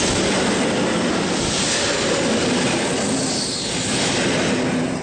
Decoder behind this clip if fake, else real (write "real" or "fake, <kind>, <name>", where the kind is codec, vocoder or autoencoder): real